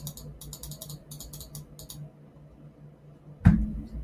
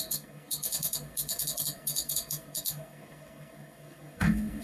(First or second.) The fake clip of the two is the second